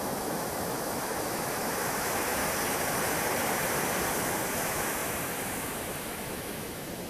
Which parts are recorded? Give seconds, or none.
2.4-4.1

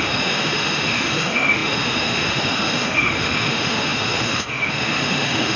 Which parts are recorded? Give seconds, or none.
none

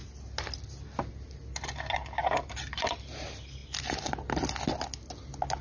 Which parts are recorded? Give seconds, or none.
0.0-5.6

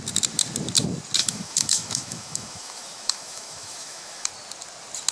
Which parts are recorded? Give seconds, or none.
0.0-1.2; 4.3-5.1

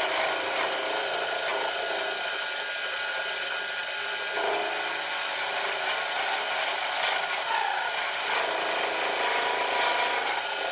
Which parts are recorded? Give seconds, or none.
0.0-10.7

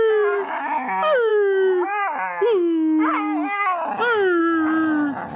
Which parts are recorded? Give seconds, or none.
0.0-5.4

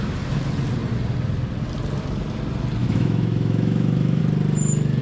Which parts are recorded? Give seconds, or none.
0.0-2.8; 4.2-5.0

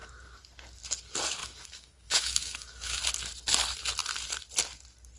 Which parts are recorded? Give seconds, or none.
0.0-1.4; 3.0-5.2